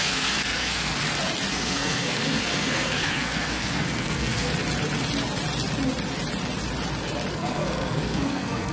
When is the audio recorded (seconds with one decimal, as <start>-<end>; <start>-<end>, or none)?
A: 0.9-1.5; 4.5-7.3